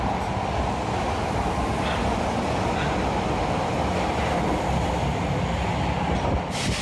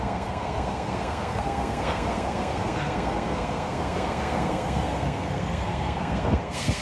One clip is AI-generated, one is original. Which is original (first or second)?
first